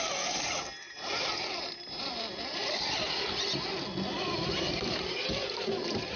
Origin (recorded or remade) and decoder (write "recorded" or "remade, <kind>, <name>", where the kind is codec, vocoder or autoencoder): recorded